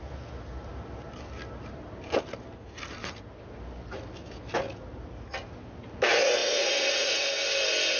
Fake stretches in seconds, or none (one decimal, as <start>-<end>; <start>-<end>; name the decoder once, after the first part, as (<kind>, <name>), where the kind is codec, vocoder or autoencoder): none